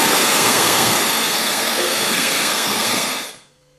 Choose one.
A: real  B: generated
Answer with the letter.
B